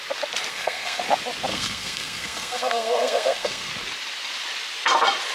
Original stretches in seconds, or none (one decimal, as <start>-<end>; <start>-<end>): 0.0-0.5; 1.0-1.5; 3.7-5.3